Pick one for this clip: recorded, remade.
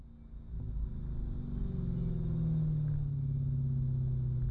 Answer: recorded